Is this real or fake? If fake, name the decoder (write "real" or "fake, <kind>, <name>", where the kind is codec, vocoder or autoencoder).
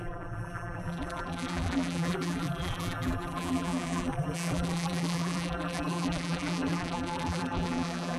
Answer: fake, vocoder, BigVGAN v2